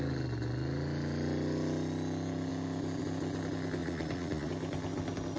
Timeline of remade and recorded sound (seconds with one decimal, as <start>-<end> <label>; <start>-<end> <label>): 0.0-3.8 recorded; 3.8-4.5 remade; 4.5-5.4 recorded

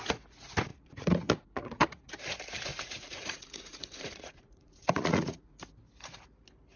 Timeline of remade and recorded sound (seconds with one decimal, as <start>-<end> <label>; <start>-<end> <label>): 0.0-0.7 recorded; 0.7-2.1 remade; 2.1-2.7 recorded; 2.7-5.6 remade; 5.6-6.8 recorded

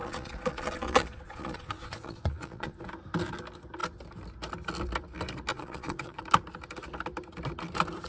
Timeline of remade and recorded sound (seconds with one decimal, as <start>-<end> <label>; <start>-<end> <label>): 0.0-2.8 remade; 2.8-5.5 recorded; 5.5-6.2 remade; 6.2-8.1 recorded

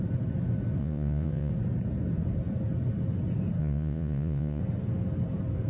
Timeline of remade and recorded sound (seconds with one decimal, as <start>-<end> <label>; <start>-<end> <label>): 0.0-0.8 recorded; 0.8-1.5 remade; 1.5-3.6 recorded; 3.6-4.6 remade; 4.6-5.7 recorded

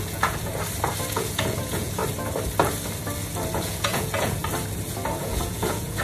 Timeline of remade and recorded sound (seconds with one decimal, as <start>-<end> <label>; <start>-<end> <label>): 0.0-0.5 remade; 0.5-1.1 recorded; 1.1-2.0 remade; 2.0-3.6 recorded; 3.6-4.4 remade; 4.4-5.2 recorded; 5.2-6.0 remade

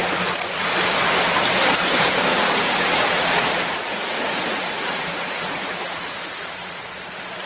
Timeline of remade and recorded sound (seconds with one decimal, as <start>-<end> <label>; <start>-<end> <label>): 0.0-0.7 remade; 0.7-2.3 recorded; 2.3-6.8 remade; 6.8-7.5 recorded